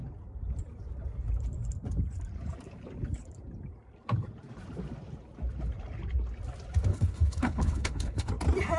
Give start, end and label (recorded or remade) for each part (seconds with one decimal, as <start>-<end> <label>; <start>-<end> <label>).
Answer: 0.0-6.9 recorded; 6.9-8.3 remade; 8.3-8.8 recorded

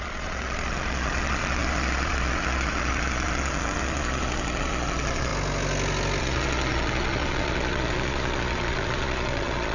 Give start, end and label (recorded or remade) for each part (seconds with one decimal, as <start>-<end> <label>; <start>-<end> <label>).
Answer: 0.0-5.3 remade; 5.3-6.2 recorded; 6.2-9.7 remade

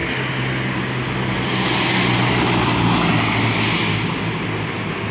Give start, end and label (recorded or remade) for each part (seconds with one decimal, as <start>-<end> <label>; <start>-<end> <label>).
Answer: 0.0-3.9 recorded; 3.9-4.4 remade; 4.4-5.1 recorded

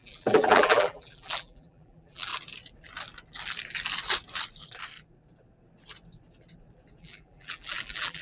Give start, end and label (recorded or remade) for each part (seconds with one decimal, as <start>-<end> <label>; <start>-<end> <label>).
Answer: 0.0-2.3 remade; 2.3-7.0 recorded; 7.0-8.2 remade

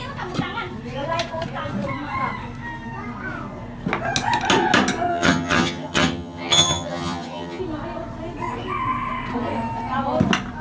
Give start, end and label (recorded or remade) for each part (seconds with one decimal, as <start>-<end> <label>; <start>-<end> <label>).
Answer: 0.0-5.1 recorded; 5.1-7.6 remade; 7.6-10.6 recorded

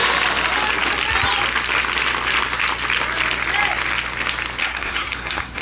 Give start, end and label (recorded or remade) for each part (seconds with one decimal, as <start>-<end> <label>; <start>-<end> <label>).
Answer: 0.0-4.6 recorded; 4.6-5.6 remade